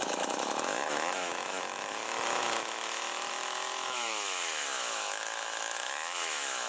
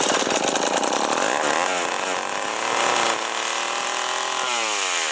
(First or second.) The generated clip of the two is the first